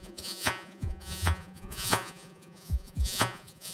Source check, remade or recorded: remade